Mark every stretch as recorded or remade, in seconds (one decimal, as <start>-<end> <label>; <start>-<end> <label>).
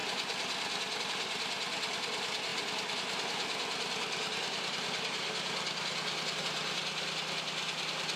0.0-8.2 recorded